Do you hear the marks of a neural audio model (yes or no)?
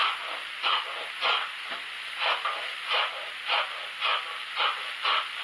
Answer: no